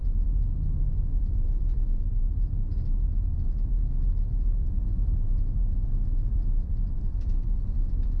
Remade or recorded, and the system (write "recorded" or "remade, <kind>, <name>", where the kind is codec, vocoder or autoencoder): recorded